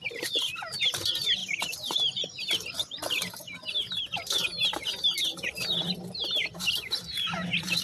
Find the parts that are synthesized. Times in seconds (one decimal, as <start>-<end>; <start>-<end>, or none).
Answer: none